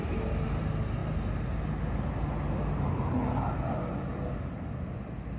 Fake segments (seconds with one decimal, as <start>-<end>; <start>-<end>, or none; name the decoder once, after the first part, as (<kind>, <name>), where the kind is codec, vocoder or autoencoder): none